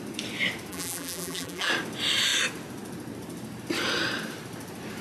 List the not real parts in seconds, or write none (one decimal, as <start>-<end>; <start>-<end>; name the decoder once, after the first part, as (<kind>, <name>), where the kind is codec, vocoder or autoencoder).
0.7-1.7 (vocoder, BigVGAN v2)